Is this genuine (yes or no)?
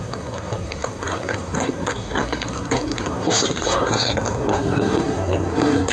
no